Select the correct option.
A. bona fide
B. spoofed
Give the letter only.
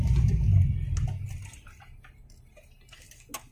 A